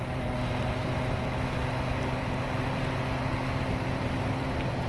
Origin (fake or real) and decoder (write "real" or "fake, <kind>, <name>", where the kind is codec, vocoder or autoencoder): real